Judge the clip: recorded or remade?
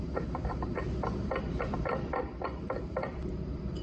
remade